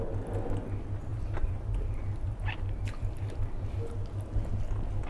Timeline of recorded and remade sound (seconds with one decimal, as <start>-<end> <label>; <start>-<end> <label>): 0.0-1.1 recorded; 1.1-3.7 remade; 3.7-5.1 recorded

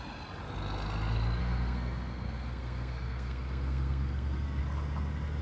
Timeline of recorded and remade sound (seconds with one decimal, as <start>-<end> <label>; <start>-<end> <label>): 0.0-1.4 recorded; 1.4-4.6 remade; 4.6-5.4 recorded

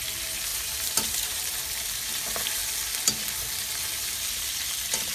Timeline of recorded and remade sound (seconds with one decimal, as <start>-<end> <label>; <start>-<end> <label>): 0.0-2.6 remade; 2.6-5.1 recorded

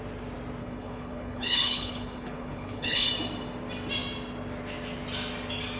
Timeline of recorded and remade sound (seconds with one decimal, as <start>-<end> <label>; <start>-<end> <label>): 0.0-0.6 recorded; 0.6-3.1 remade; 3.1-5.8 recorded

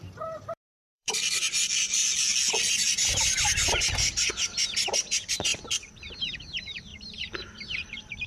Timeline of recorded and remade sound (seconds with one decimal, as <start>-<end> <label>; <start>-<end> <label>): 0.0-2.0 remade; 2.0-2.7 recorded; 2.7-5.5 remade; 5.5-6.2 recorded; 6.2-8.3 remade

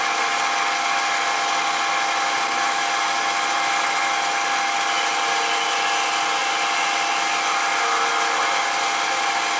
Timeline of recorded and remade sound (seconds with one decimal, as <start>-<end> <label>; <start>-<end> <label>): 0.0-9.6 recorded

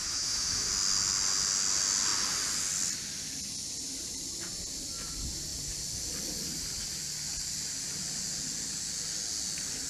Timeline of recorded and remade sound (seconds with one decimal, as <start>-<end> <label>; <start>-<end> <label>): 0.0-0.7 remade; 0.7-9.9 recorded

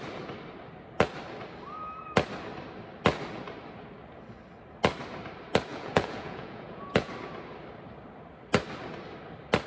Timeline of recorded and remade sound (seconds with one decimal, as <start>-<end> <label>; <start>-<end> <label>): 0.0-5.7 recorded; 5.7-7.1 remade; 7.1-9.7 recorded